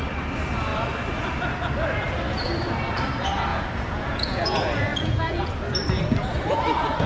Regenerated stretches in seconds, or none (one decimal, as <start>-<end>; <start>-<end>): 3.5-5.5